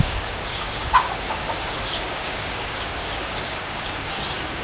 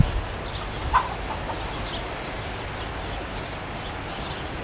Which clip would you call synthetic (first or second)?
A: first